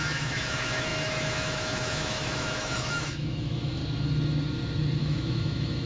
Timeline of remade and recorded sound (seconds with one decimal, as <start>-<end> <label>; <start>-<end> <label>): 0.0-3.8 remade; 3.8-5.0 recorded; 5.0-5.9 remade